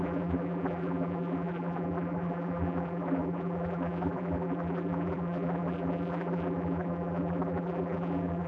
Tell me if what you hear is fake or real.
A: fake